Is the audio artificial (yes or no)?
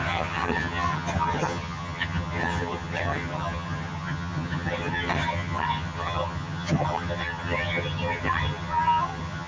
yes